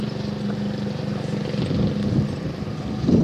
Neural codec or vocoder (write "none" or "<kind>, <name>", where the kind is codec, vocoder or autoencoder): none